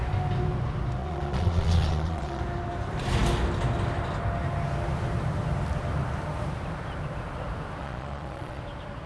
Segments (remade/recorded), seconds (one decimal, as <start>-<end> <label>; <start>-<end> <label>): 0.0-1.0 recorded; 1.0-2.4 remade; 2.4-7.8 recorded; 7.8-8.6 remade; 8.6-9.1 recorded